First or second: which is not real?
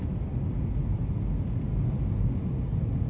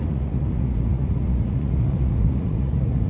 second